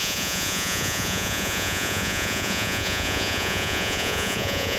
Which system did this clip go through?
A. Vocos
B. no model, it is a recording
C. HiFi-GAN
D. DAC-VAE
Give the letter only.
A